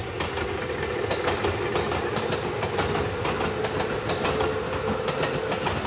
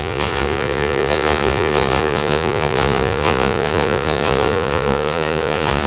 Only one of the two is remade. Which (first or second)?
second